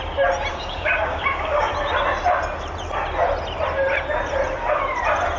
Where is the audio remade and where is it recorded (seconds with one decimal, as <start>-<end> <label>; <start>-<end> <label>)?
0.0-0.5 recorded; 0.5-1.7 remade; 1.7-5.4 recorded